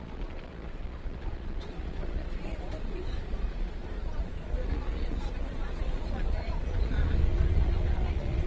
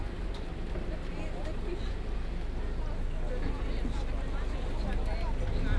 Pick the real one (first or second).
second